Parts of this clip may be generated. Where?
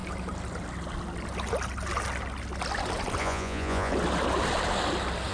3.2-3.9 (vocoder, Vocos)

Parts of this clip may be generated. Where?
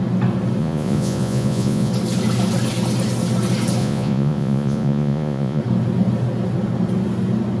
0.6-1.9 (vocoder, Vocos); 3.8-5.6